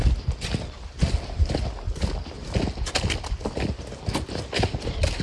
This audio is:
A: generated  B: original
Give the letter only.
B